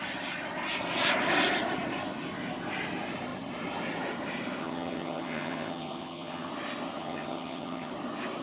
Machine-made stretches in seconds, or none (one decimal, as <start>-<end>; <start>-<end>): 4.6-6.5; 7.0-7.9